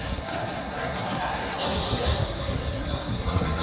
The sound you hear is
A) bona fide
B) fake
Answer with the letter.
B